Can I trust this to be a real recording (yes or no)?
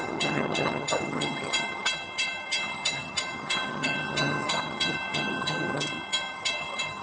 no